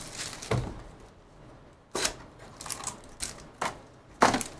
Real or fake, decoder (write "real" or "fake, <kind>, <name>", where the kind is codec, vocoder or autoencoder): real